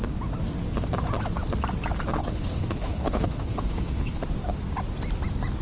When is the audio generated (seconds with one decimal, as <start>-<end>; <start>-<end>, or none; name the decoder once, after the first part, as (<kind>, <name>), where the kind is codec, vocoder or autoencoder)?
2.2-4.2 (codec, HILCodec)